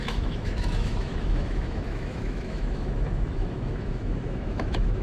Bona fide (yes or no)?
no